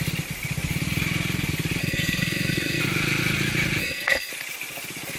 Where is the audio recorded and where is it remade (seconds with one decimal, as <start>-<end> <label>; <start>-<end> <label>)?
0.0-1.8 recorded; 1.8-2.8 remade; 2.8-3.8 recorded; 3.8-4.3 remade; 4.3-5.2 recorded